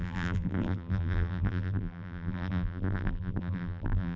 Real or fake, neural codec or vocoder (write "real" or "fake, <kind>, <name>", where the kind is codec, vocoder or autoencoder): fake, vocoder, BigVGAN v2